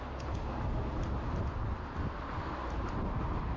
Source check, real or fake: real